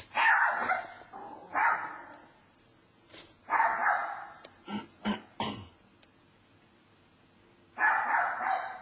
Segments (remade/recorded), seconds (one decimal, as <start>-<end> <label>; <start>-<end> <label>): 0.0-8.8 recorded